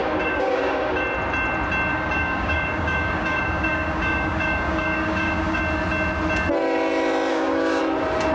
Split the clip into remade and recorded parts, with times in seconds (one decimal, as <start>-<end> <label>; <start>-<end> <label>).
0.0-1.0 remade; 1.0-1.9 recorded; 1.9-5.6 remade; 5.6-7.3 recorded; 7.3-7.8 remade; 7.8-8.3 recorded